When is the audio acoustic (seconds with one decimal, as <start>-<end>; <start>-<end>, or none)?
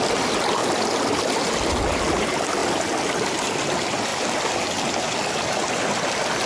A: 0.0-6.5